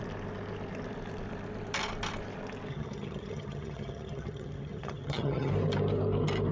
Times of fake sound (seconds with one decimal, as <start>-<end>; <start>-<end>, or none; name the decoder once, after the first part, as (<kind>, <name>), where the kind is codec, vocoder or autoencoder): 2.7-5.5 (vocoder, HiFi-GAN)